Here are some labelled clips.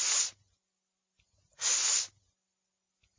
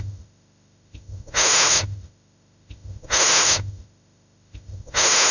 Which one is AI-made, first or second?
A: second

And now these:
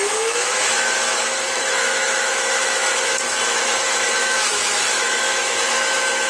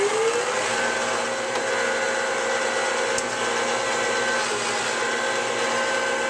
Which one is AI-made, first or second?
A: first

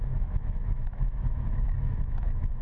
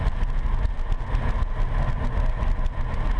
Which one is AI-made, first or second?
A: first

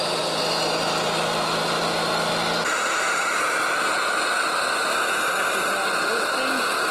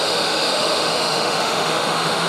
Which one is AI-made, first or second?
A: second